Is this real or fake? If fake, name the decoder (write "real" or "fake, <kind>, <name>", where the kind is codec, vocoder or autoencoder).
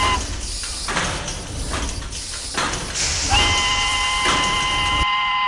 real